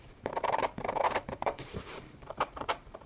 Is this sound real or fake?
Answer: fake